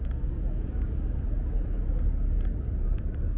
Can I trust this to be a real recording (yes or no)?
yes